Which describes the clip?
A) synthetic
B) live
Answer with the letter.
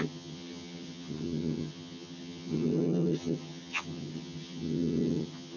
A